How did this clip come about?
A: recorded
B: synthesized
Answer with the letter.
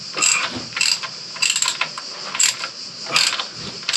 A